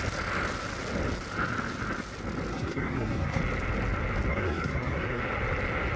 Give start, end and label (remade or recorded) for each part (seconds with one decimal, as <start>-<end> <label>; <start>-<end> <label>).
0.0-2.5 recorded; 2.5-3.4 remade; 3.4-4.3 recorded; 4.3-5.2 remade; 5.2-6.0 recorded